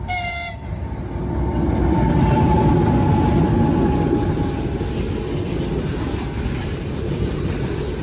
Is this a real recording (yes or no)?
yes